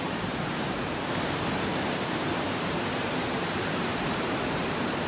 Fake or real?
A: fake